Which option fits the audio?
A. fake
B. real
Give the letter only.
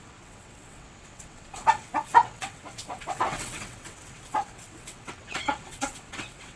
A